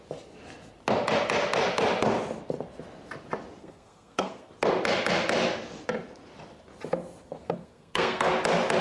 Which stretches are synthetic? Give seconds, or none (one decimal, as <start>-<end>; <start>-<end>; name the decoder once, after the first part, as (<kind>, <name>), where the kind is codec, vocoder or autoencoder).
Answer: 3.6-4.5 (codec, SNAC); 7.4-8.3